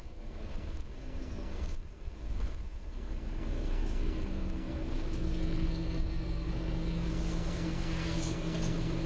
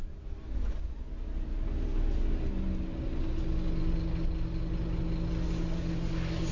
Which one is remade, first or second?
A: first